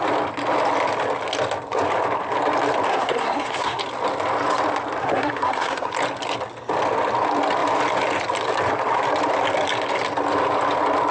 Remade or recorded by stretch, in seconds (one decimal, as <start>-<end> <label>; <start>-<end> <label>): 0.0-2.9 recorded; 2.9-3.8 remade; 3.8-5.0 recorded; 5.0-5.9 remade; 5.9-11.1 recorded